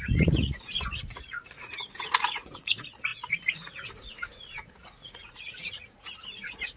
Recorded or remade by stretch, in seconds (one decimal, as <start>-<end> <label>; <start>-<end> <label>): 0.0-6.8 remade